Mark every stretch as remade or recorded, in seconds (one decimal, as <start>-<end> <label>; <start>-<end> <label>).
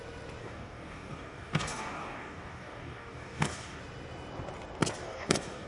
0.0-0.4 recorded; 0.4-3.8 remade; 3.8-5.0 recorded; 5.0-5.7 remade